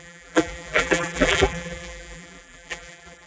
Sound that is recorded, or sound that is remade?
remade